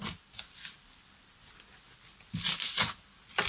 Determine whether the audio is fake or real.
fake